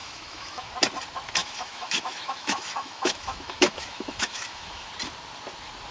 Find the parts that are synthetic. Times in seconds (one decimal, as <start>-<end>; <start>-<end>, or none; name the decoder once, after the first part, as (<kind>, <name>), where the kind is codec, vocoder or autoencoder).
0.0-0.7 (autoencoder, DAC-VAE); 1.4-4.9